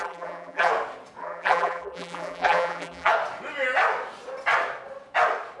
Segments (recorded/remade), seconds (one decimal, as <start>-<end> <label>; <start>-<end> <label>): 0.0-0.7 remade; 0.7-1.2 recorded; 1.2-3.1 remade; 3.1-5.6 recorded